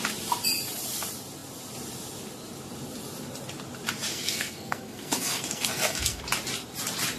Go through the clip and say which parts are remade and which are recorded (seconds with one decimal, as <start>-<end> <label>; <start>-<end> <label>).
0.0-4.1 recorded; 4.1-6.2 remade; 6.2-7.2 recorded